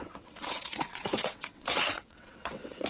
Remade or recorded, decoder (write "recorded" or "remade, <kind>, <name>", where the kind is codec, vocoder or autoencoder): remade, vocoder, WaveNeXt